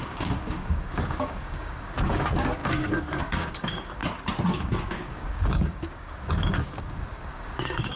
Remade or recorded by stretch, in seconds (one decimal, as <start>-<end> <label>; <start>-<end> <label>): 0.0-4.0 remade; 4.0-4.5 recorded; 4.5-8.0 remade